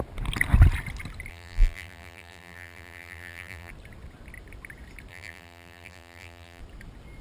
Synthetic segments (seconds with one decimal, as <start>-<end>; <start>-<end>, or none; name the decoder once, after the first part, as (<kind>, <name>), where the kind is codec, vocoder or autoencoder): 1.3-3.7 (vocoder, BigVGAN v2); 5.1-6.6

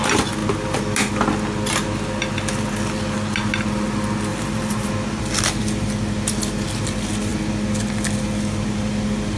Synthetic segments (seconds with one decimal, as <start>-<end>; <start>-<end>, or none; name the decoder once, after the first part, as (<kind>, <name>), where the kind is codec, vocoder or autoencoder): 4.3-4.9 (vocoder, BigVGAN v2)

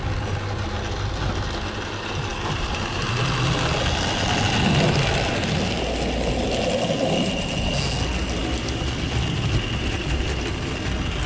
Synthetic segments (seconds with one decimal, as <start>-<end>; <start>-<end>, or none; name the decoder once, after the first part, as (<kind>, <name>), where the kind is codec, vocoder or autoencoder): 2.3-3.0 (vocoder, BigVGAN v2)

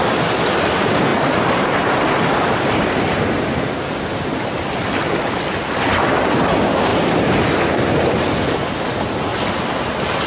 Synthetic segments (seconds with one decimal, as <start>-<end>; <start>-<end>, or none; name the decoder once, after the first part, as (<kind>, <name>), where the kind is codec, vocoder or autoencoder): 1.1-3.4 (vocoder, BigVGAN v2); 9.3-9.9

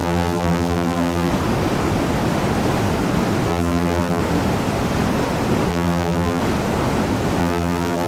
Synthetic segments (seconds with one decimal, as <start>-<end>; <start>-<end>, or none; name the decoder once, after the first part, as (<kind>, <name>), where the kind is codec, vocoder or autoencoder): 0.0-1.3 (vocoder, BigVGAN v2); 3.5-4.2; 5.7-6.4; 7.4-8.1

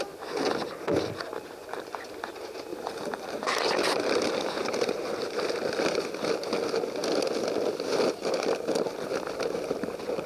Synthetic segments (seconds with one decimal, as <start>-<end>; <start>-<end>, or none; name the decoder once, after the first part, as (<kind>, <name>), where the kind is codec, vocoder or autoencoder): 2.7-4.1 (vocoder, BigVGAN v2)

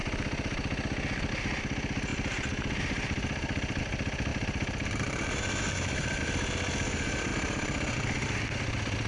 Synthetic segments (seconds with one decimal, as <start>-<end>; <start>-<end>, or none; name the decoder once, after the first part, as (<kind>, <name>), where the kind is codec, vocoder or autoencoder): 2.1-3.8 (vocoder, BigVGAN v2); 4.3-6.2; 7.3-7.9

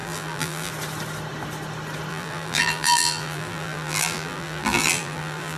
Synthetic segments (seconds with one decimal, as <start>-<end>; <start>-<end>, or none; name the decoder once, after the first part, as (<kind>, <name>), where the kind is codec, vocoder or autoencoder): 0.0-0.7 (vocoder, BigVGAN v2); 2.1-5.6